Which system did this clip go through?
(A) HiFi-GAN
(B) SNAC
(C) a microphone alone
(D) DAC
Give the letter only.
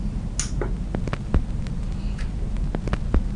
C